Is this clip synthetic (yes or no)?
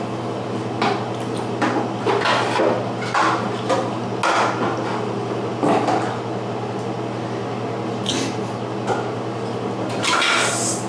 no